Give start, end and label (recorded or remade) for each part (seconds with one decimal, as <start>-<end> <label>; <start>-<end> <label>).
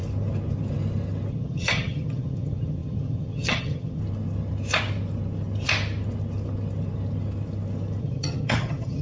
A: 0.0-1.3 recorded; 1.3-4.0 remade; 4.0-8.0 recorded; 8.0-9.0 remade